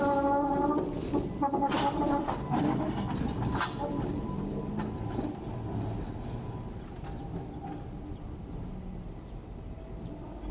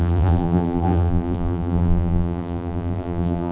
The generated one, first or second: second